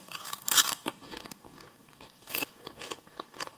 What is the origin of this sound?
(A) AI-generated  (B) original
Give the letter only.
A